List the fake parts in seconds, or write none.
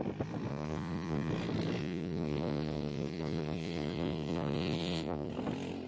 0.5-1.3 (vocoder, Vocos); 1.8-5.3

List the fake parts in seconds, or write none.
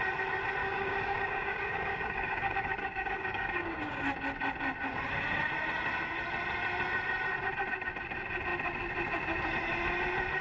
0.6-4.0 (codec, DAC)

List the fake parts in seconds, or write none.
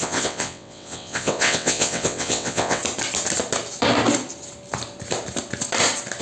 0.0-2.8 (vocoder, WaveNeXt)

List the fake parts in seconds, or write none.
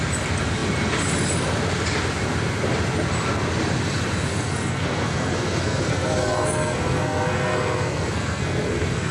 4.3-9.1 (codec, SNAC)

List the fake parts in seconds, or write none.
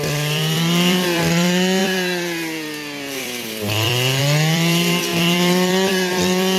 0.0-6.6 (vocoder, BigVGAN v2)